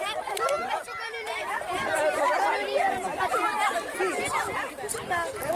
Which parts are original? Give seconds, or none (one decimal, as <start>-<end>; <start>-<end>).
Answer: 0.0-5.6